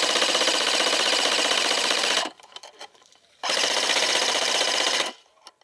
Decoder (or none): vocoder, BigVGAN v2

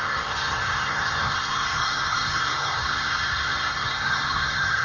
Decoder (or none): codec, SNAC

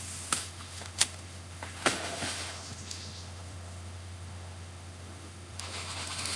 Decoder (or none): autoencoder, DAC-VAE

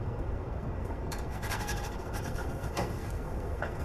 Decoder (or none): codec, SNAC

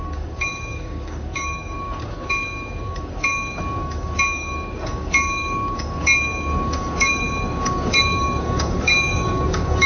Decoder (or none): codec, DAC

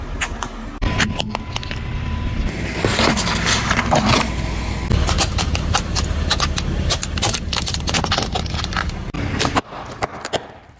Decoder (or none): none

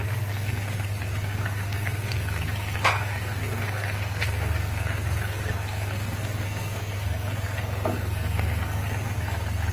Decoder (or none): codec, SNAC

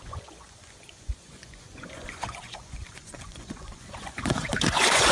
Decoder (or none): vocoder, Vocos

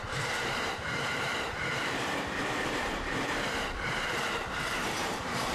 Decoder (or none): vocoder, BigVGAN v2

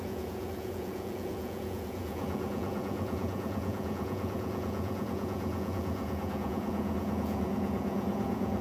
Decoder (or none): vocoder, Vocos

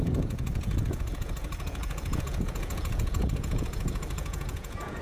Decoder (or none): vocoder, Vocos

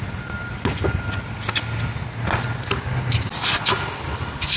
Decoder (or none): none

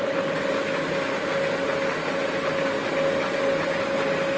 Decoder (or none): none